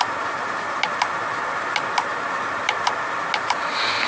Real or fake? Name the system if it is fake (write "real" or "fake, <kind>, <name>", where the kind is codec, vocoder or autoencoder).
real